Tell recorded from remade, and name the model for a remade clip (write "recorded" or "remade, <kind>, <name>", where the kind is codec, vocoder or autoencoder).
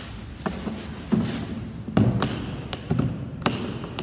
recorded